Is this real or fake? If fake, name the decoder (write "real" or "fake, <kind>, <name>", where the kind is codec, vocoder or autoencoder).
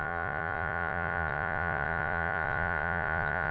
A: fake, vocoder, Vocos